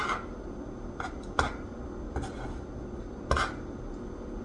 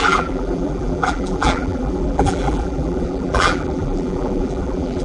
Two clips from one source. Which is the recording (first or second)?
first